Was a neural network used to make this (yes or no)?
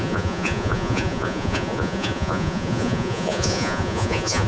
yes